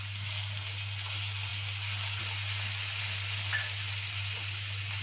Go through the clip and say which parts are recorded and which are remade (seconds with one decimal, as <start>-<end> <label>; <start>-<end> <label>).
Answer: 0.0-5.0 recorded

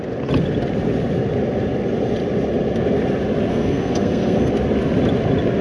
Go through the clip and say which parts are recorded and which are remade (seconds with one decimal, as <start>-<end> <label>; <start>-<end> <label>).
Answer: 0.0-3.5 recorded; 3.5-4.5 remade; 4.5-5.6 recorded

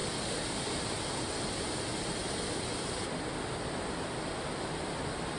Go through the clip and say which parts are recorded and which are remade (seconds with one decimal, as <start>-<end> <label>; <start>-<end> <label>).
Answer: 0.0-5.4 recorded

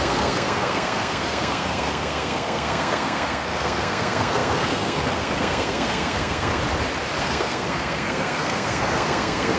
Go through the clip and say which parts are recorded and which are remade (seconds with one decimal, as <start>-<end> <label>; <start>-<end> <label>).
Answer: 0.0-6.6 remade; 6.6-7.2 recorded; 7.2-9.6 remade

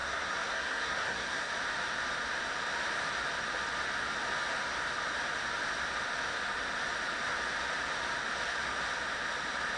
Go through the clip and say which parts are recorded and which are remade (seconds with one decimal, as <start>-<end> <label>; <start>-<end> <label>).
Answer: 0.0-1.5 remade; 1.5-9.8 recorded

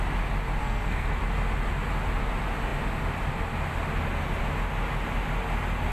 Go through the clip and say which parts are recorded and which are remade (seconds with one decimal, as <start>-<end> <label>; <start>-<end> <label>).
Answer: 0.0-0.6 recorded; 0.6-1.2 remade; 1.2-5.9 recorded

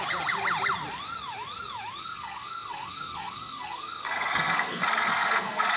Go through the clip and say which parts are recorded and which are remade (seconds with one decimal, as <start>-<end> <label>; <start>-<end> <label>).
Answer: 0.0-2.0 recorded; 2.0-5.8 remade

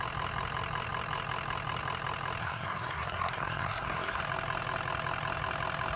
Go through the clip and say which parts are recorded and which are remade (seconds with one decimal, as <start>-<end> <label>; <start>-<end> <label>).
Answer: 0.0-2.4 recorded; 2.4-4.2 remade; 4.2-6.0 recorded